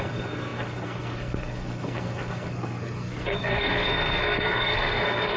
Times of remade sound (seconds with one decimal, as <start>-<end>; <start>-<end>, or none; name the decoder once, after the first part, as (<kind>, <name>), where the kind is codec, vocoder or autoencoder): 0.0-5.4 (codec, SNAC)